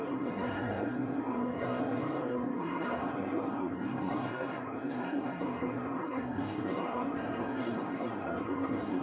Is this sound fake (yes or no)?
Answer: yes